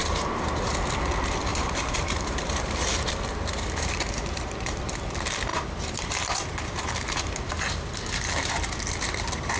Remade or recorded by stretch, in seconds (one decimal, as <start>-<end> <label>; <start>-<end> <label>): 0.0-0.7 remade; 0.7-1.5 recorded; 1.5-5.0 remade; 5.0-5.5 recorded; 5.5-7.7 remade; 7.7-9.6 recorded